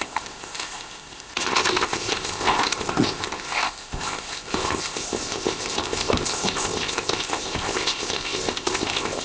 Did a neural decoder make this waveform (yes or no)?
yes